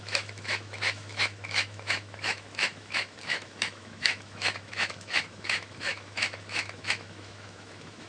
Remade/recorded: remade